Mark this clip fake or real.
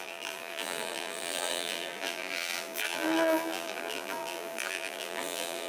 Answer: fake